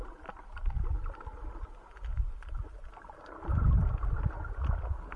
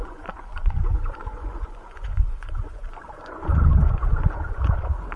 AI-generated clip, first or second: second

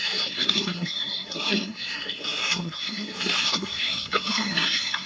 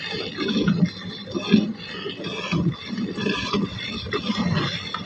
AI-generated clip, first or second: first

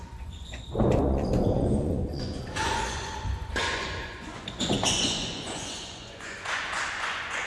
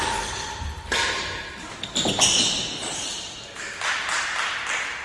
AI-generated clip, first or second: first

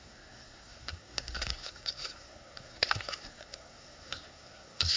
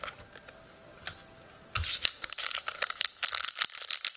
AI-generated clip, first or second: first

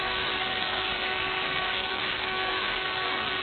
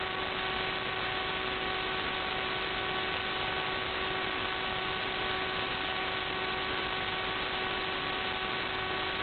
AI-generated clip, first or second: first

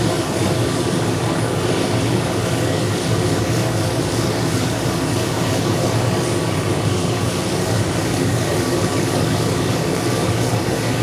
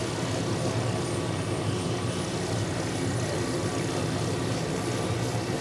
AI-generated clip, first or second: first